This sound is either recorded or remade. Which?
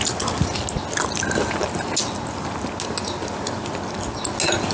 recorded